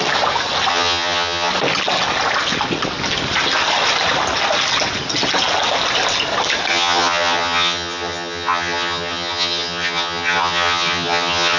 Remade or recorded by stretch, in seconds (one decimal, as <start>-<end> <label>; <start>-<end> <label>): 0.0-0.7 recorded; 0.7-1.5 remade; 1.5-6.7 recorded; 6.7-11.6 remade